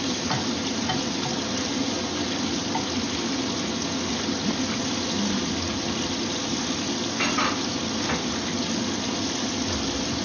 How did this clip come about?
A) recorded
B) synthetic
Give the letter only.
A